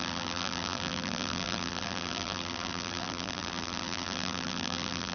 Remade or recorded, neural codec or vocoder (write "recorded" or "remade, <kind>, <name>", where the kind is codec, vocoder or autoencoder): remade, vocoder, BigVGAN v2